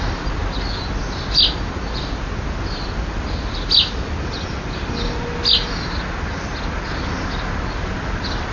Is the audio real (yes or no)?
yes